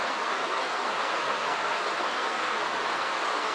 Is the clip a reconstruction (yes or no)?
yes